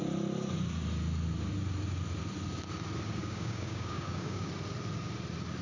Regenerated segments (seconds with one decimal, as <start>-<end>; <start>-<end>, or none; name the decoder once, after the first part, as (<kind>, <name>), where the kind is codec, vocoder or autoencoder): 3.2-4.5 (codec, DAC)